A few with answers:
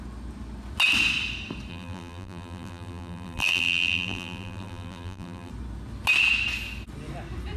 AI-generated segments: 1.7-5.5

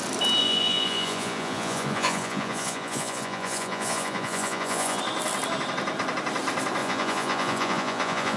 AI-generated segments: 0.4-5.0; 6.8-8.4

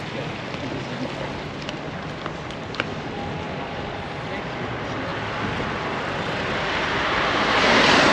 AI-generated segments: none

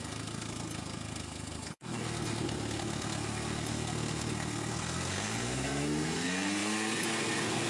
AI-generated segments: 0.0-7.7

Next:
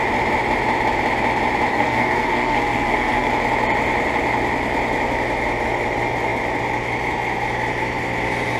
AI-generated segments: 1.7-3.3